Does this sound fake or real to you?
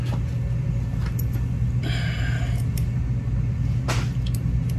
real